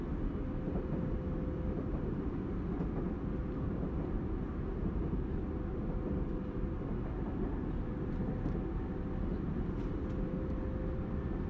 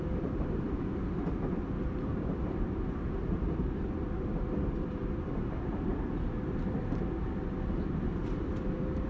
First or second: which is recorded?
first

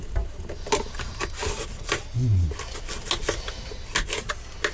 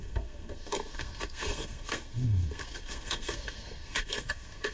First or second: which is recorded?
first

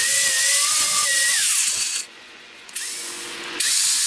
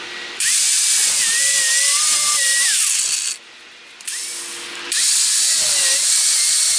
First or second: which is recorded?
second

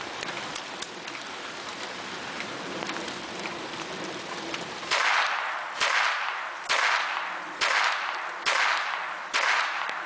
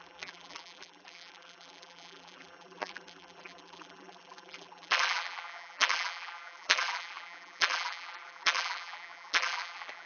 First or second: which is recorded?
first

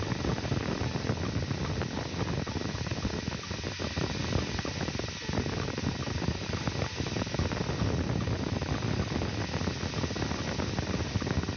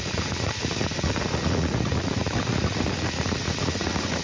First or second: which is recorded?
first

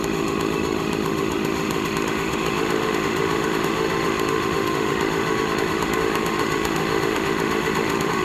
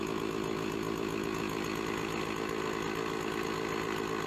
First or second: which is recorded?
second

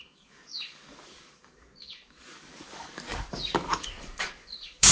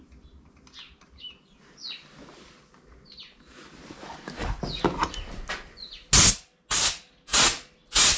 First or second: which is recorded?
second